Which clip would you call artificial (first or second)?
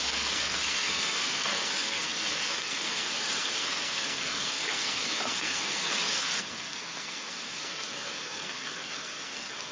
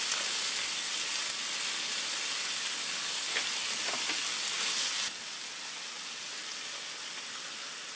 first